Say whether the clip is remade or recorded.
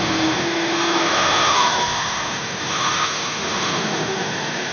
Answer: remade